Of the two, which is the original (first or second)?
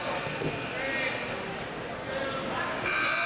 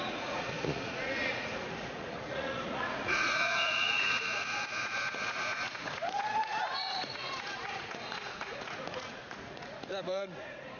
first